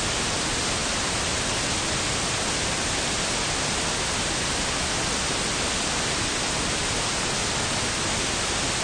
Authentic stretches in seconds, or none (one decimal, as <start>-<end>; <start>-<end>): 0.0-8.8